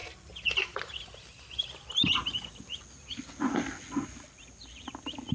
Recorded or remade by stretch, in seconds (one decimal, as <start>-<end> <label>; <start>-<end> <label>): 0.0-5.3 recorded